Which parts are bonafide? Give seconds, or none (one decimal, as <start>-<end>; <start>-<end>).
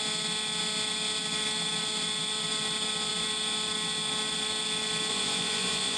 0.0-5.1